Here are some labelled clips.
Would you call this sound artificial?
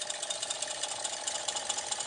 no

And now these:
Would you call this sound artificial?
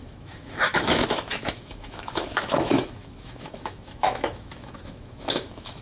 yes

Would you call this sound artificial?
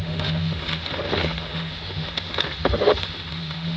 yes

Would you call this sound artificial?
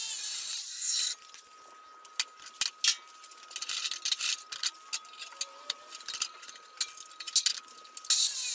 no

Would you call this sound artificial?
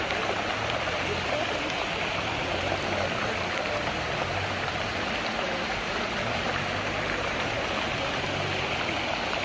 no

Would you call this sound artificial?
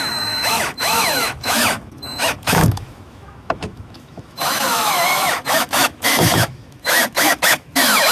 yes